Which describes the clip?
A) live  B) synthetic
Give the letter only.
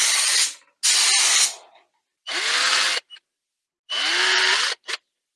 A